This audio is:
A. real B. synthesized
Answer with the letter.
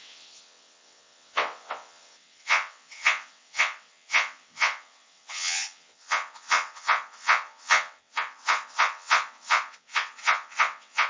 B